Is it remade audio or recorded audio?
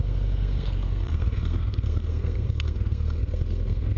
remade